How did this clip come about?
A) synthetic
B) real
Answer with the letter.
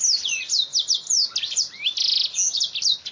B